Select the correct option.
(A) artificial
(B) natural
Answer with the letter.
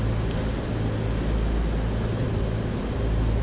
B